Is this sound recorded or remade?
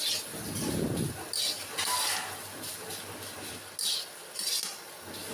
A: recorded